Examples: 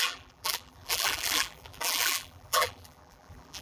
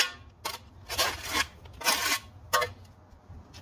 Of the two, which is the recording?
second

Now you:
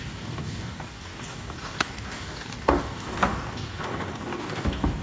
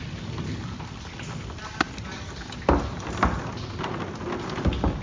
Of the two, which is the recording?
second